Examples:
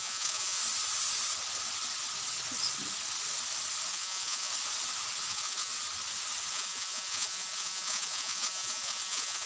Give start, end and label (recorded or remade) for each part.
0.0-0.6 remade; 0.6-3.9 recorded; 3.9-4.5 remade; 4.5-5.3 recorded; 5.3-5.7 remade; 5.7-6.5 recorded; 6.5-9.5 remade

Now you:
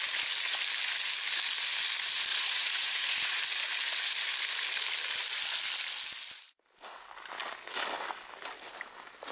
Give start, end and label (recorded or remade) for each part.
0.0-2.3 recorded; 2.3-3.4 remade; 3.4-9.3 recorded